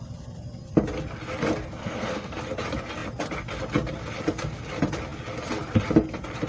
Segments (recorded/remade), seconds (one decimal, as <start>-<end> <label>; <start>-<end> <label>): 0.0-1.8 recorded; 1.8-2.4 remade; 2.4-6.5 recorded